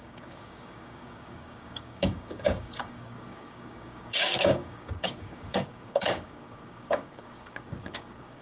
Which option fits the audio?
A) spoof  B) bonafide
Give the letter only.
A